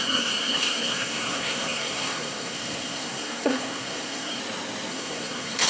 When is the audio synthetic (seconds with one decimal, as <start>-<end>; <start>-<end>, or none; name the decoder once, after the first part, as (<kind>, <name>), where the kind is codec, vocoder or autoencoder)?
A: 0.0-4.4 (codec, SNAC); 4.9-5.7